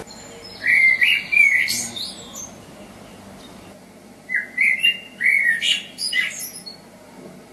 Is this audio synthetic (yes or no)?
no